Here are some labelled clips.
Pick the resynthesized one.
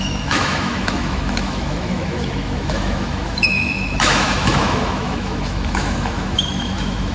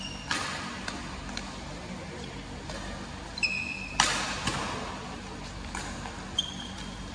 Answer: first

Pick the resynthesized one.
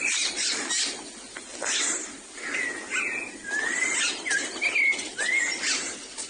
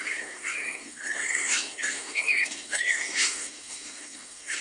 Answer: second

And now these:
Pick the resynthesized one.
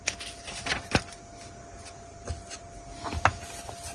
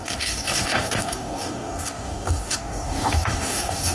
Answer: second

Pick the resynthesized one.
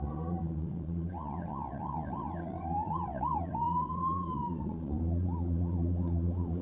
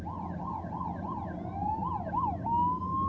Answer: first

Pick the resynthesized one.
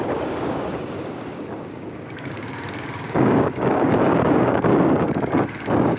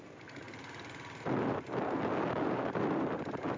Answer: first